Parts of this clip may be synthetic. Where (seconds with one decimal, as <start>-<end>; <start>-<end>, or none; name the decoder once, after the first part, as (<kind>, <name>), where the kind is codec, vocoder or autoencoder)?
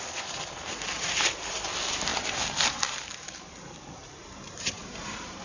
2.1-5.4 (vocoder, BigVGAN v2)